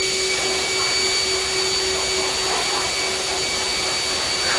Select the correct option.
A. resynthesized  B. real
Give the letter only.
B